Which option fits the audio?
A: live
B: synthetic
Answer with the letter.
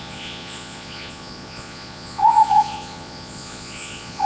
B